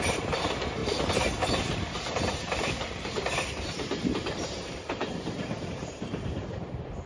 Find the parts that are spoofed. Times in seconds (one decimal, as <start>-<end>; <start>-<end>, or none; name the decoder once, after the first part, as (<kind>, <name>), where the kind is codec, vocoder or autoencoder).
0.0-0.8 (vocoder, BigVGAN v2); 1.4-7.1